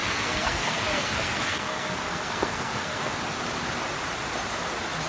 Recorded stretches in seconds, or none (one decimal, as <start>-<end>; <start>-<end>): 3.1-5.1